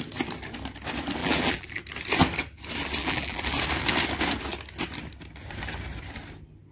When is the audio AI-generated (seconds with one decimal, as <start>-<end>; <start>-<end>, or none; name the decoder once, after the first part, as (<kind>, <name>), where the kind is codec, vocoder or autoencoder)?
1.2-1.8 (vocoder, BigVGAN v2); 3.0-3.5